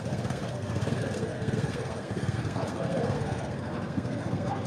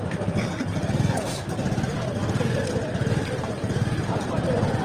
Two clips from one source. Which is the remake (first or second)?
first